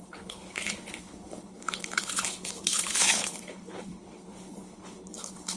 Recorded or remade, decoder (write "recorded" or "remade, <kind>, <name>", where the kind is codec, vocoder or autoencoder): remade, codec, HILCodec